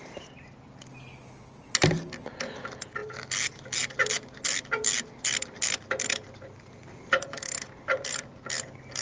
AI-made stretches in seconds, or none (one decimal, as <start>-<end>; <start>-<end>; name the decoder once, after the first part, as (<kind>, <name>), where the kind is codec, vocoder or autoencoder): none